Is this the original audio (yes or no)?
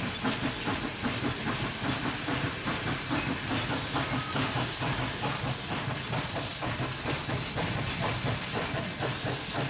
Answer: yes